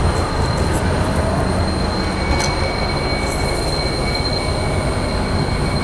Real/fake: real